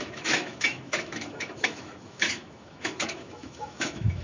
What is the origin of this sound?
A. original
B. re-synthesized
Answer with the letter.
B